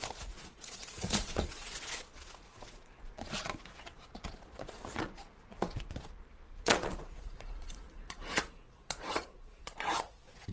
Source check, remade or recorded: remade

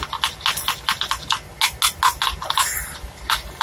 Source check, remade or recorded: recorded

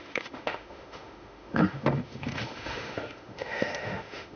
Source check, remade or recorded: remade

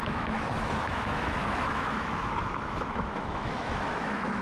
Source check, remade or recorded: remade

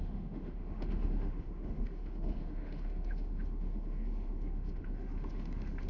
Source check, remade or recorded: remade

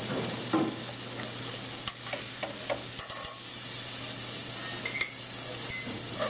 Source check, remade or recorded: recorded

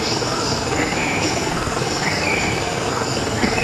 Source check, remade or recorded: remade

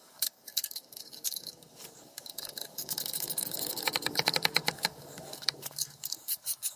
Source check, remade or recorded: remade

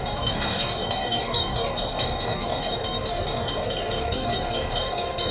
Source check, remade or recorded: remade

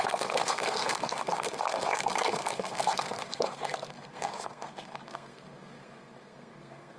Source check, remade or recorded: remade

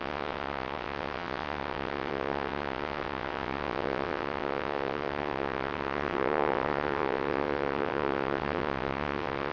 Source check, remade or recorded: remade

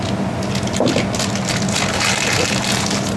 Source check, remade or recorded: recorded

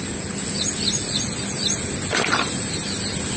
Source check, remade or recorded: recorded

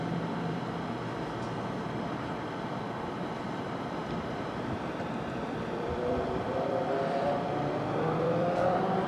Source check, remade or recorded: remade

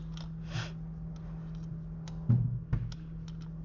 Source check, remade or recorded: recorded